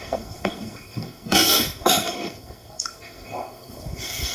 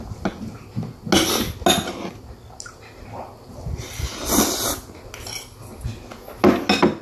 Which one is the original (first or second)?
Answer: second